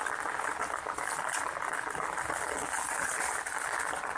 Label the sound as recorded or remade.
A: recorded